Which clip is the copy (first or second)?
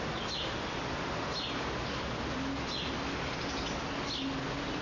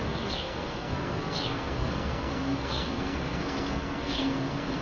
second